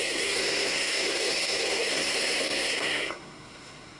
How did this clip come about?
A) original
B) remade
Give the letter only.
B